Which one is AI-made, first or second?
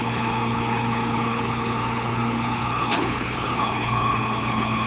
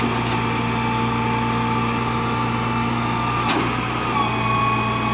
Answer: first